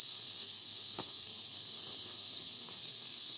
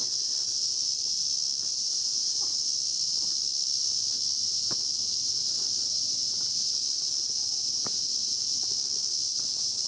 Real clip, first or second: second